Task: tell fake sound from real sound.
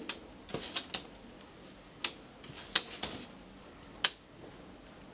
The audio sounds real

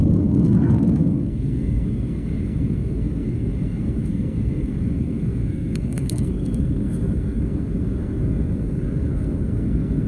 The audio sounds fake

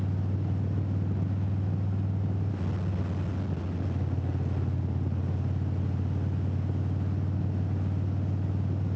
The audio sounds real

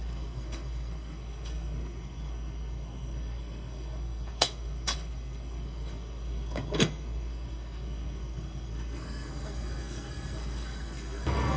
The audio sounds fake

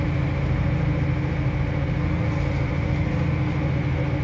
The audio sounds real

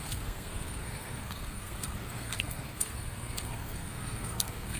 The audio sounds fake